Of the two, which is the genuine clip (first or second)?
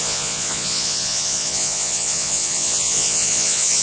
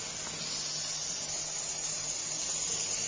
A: second